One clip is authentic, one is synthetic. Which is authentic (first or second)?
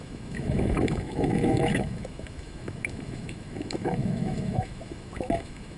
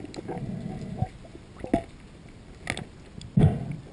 second